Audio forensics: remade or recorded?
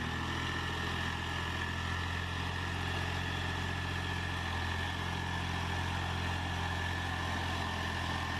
recorded